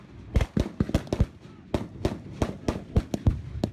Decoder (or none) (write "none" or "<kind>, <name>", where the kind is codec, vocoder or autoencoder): none